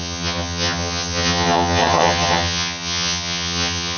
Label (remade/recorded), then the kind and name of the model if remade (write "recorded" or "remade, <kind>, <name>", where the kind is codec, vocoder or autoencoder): remade, vocoder, HiFi-GAN